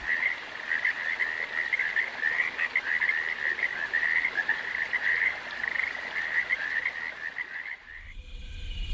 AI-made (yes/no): no